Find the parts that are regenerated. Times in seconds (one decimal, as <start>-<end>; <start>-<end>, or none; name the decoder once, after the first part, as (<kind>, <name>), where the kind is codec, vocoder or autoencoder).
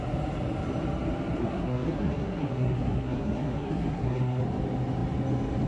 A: 1.4-4.4 (codec, SNAC)